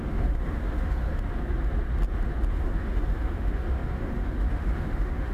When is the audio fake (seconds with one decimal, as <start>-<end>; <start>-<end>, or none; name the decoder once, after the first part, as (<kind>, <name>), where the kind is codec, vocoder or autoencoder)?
0.0-1.1 (autoencoder, DAC-VAE); 2.5-5.3